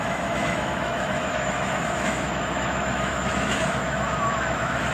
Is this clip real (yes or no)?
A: no